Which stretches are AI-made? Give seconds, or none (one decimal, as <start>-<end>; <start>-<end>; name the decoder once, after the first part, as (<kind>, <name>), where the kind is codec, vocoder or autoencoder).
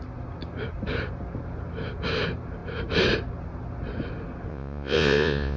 4.5-5.6 (vocoder, Vocos)